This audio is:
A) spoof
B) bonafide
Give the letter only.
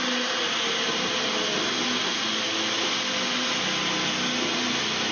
B